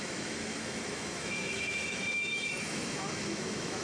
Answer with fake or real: fake